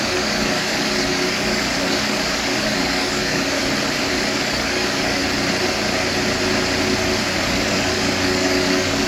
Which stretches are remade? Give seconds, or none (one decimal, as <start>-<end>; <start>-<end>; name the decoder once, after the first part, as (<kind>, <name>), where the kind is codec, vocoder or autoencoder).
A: 0.0-3.6 (codec, DAC); 4.1-5.2; 7.4-9.1